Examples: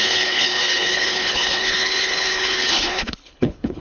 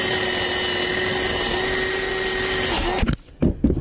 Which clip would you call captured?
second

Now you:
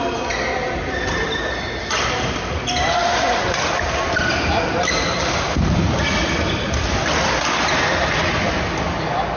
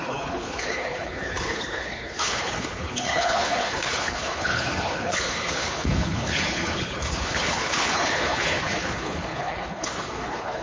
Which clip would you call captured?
first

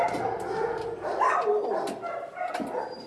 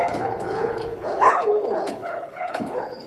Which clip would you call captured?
first